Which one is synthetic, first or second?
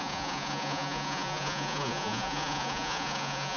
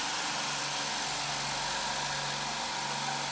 first